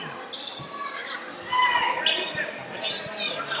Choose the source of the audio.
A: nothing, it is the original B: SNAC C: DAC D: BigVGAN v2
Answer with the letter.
A